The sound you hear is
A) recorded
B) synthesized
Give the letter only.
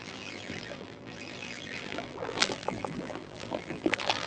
B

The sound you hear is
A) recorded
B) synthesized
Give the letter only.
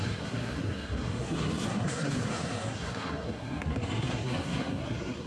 B